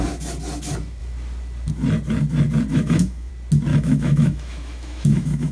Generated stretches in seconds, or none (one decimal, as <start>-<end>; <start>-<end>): 2.7-3.3; 3.7-5.5